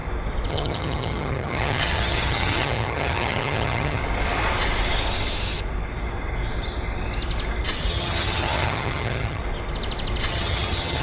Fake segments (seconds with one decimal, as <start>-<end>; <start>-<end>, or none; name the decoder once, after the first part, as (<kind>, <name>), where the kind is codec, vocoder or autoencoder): 0.5-4.0 (vocoder, HiFi-GAN); 7.9-9.4; 10.3-11.0